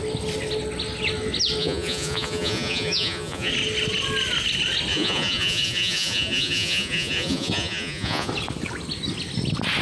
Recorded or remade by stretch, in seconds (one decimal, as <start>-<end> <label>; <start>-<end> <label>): 0.0-1.6 recorded; 1.6-3.5 remade; 3.5-4.9 recorded; 4.9-8.3 remade; 8.3-9.8 recorded

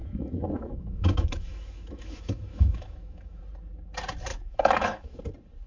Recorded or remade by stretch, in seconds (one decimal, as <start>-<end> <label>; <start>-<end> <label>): 0.0-3.4 remade; 3.4-4.3 recorded; 4.3-5.2 remade; 5.2-5.7 recorded

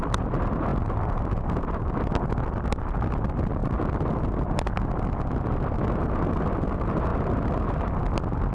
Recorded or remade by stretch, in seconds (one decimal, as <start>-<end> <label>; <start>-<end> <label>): 0.0-8.5 recorded

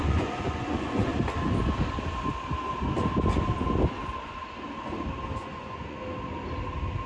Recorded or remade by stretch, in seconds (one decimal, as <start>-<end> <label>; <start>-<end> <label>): 0.0-1.1 remade; 1.1-5.4 recorded; 5.4-6.0 remade; 6.0-7.1 recorded

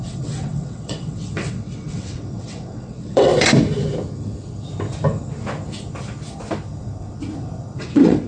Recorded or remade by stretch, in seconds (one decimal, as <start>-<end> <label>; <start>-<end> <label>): 0.0-3.3 remade; 3.3-7.8 recorded; 7.8-8.3 remade